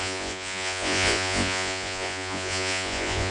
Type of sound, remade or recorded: remade